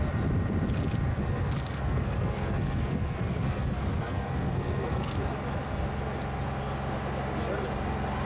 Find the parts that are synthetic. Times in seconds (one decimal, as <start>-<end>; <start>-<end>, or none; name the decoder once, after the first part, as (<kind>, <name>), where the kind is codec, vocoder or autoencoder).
1.1-5.2 (codec, SNAC)